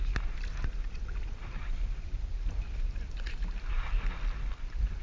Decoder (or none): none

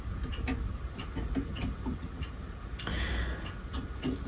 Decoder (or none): none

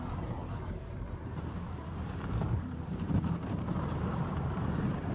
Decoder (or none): vocoder, BigVGAN v2